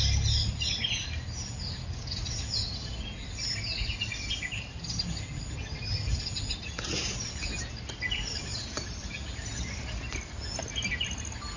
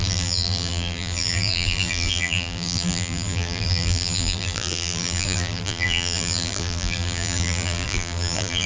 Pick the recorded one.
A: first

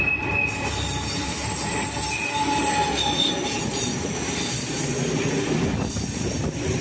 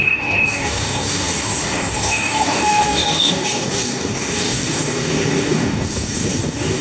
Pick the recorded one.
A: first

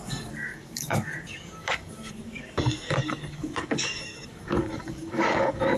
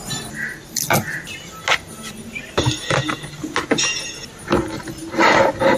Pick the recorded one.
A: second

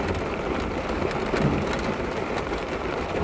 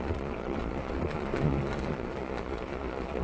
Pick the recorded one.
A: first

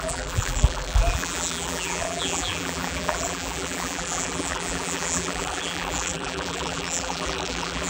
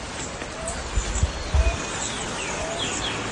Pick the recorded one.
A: second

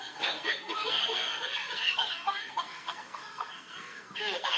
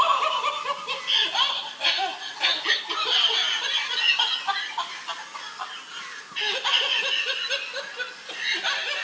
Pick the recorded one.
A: second